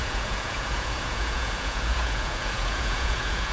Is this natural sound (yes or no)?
no